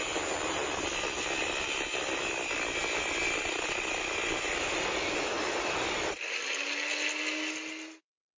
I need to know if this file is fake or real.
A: real